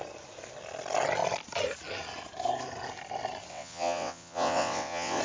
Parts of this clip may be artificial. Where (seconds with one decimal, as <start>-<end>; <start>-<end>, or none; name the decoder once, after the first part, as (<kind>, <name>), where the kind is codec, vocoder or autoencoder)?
3.5-5.2 (vocoder, WaveNeXt)